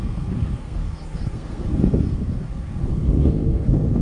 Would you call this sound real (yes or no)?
no